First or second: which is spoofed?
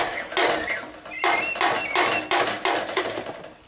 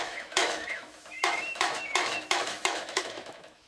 second